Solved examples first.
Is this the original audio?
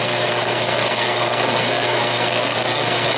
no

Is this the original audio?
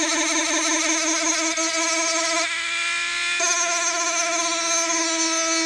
yes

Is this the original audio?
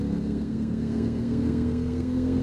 no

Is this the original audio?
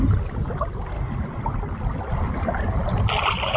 yes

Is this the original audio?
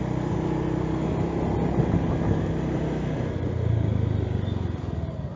yes